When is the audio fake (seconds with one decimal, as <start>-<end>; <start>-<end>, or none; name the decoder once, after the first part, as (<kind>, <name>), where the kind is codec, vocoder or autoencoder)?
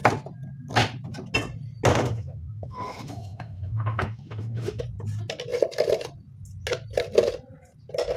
1.9-4.8 (autoencoder, DAC-VAE)